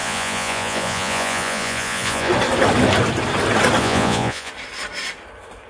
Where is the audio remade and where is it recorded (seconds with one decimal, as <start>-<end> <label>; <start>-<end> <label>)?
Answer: 0.0-2.3 remade; 2.3-3.8 recorded; 3.8-4.5 remade; 4.5-5.7 recorded